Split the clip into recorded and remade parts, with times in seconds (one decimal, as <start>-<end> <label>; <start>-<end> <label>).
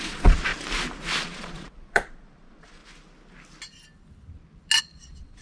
0.0-0.5 remade; 0.5-1.2 recorded; 1.2-2.8 remade; 2.8-4.8 recorded; 4.8-5.4 remade